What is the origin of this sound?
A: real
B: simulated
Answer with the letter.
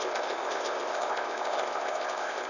B